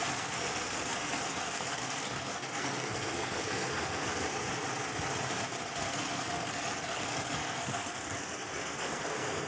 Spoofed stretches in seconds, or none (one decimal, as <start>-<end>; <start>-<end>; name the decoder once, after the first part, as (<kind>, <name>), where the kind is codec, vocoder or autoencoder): 0.0-4.1 (codec, SNAC); 5.8-9.5